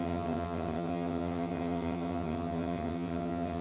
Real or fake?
fake